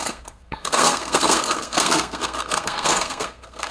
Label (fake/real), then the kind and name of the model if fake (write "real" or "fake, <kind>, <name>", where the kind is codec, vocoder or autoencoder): fake, codec, SNAC